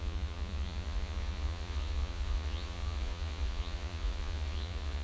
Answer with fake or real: fake